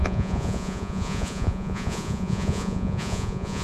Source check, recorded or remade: remade